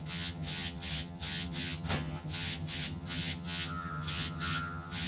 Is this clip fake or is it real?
fake